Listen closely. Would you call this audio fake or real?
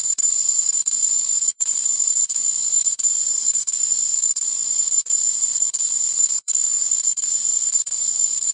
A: fake